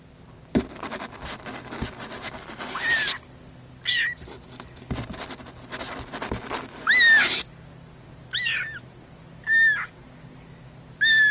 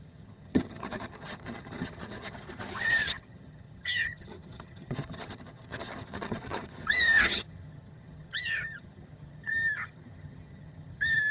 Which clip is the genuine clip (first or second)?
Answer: first